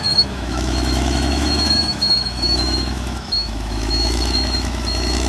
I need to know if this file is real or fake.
fake